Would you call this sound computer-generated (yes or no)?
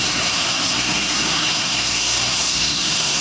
yes